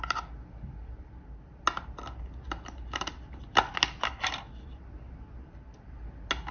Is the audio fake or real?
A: real